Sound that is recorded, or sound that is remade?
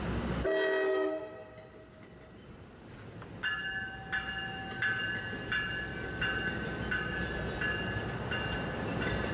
recorded